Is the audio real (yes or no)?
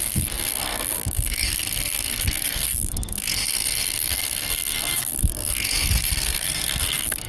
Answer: no